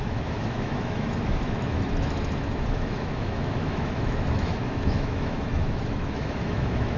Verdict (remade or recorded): remade